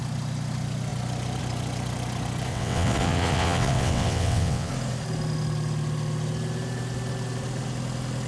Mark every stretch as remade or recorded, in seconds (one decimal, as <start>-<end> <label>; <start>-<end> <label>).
0.0-2.5 recorded; 2.5-4.7 remade; 4.7-8.3 recorded